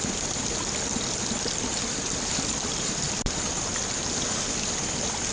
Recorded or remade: remade